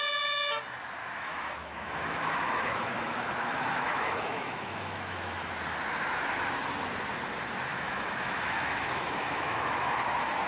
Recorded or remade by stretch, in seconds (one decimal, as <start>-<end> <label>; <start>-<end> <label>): 0.0-1.0 recorded; 1.0-5.5 remade; 5.5-7.7 recorded; 7.7-10.0 remade; 10.0-10.5 recorded